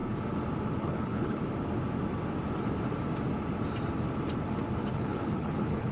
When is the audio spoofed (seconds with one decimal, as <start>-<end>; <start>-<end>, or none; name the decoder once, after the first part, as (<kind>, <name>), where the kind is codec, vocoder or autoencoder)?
0.8-1.4 (codec, HILCodec); 4.9-5.9